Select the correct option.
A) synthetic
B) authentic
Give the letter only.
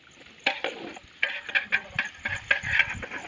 B